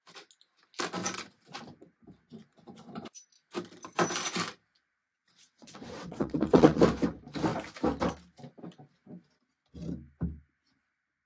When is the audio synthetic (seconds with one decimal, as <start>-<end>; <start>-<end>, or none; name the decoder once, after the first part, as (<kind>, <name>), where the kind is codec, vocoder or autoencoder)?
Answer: 5.0-6.8 (vocoder, WaveNeXt)

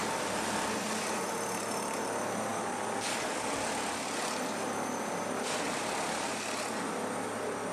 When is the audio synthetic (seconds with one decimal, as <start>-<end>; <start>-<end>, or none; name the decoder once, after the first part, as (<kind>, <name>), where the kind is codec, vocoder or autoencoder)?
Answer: 2.5-3.7 (codec, DAC)

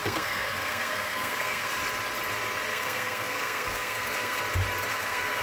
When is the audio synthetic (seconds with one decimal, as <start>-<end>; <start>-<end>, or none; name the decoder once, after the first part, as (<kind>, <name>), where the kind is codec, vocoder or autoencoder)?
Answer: 0.0-1.7 (codec, SNAC); 2.7-4.4; 4.9-5.4

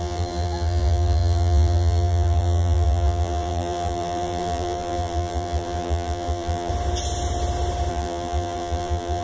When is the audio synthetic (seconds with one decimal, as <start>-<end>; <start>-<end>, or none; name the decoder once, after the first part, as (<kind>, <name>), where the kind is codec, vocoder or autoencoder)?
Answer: 0.0-6.7 (vocoder, BigVGAN v2); 7.9-9.2

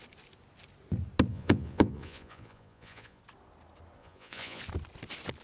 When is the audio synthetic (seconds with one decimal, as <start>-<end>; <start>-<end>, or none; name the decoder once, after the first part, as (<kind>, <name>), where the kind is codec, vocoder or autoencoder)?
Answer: 1.3-3.2 (vocoder, Vocos); 4.0-4.6

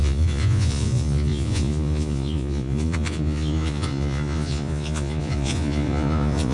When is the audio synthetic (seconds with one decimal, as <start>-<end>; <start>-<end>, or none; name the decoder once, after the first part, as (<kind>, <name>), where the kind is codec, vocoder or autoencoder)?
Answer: 0.0-6.5 (vocoder, Vocos)

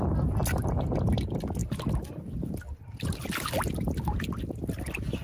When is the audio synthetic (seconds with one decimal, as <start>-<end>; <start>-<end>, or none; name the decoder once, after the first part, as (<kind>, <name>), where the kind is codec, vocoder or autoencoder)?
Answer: none

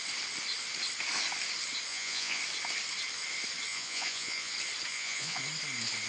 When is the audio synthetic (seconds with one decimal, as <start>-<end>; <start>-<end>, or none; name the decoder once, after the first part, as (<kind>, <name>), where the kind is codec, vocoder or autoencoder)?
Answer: 1.9-2.4 (vocoder, Vocos); 3.7-4.5; 4.9-5.4